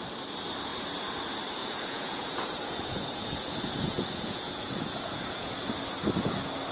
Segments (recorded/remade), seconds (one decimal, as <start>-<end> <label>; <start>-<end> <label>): 0.0-1.6 recorded; 1.6-5.6 remade; 5.6-6.7 recorded